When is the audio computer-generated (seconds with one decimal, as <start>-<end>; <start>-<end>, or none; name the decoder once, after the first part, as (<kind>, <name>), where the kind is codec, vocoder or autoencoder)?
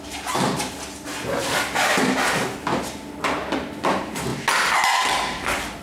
none